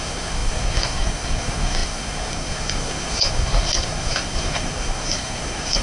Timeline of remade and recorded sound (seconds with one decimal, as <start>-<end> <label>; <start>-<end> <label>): 0.0-5.8 remade